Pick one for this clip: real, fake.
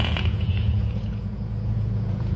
fake